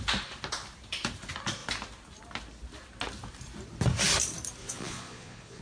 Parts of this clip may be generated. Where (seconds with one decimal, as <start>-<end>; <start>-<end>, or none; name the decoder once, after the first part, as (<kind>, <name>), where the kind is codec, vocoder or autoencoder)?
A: 4.6-5.6 (vocoder, Vocos)

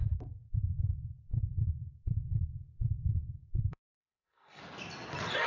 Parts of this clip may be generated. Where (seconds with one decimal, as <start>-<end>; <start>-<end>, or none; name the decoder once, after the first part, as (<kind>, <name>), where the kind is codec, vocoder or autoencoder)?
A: 1.3-4.6 (codec, SNAC)

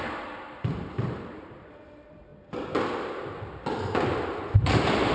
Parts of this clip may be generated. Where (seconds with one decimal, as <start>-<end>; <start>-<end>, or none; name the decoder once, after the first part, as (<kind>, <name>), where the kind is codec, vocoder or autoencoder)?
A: 0.0-2.3 (vocoder, BigVGAN v2); 4.6-5.1

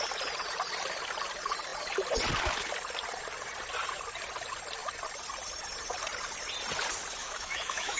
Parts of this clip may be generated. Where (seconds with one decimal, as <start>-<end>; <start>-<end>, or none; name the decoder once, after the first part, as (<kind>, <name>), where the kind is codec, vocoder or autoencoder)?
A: 7.2-8.0 (autoencoder, DAC-VAE)

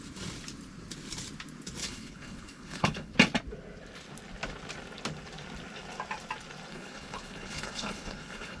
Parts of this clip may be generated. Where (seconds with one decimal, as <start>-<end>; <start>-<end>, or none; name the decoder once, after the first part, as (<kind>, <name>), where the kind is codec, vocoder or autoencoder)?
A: 1.8-3.1 (codec, HILCodec); 6.7-8.6